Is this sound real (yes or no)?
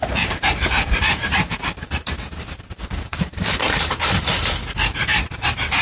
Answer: no